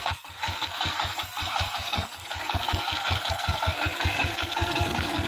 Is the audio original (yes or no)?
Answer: no